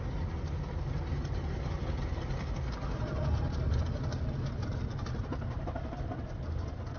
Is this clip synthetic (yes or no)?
no